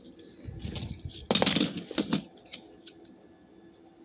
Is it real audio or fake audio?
real